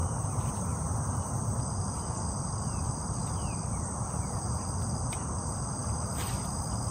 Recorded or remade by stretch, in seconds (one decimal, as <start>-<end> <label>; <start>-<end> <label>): 0.0-3.2 remade; 3.2-3.8 recorded; 3.8-5.8 remade; 5.8-6.9 recorded